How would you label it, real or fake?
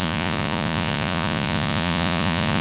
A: fake